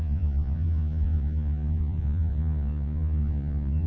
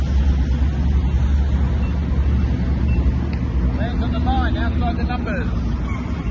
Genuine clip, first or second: second